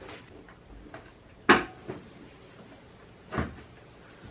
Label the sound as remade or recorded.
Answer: recorded